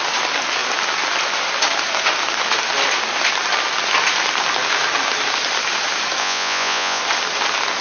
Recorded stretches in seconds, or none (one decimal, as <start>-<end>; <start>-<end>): 0.0-6.2; 7.0-7.8